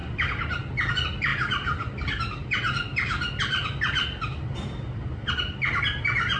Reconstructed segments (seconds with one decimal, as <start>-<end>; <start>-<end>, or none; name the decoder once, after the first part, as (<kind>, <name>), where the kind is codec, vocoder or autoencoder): none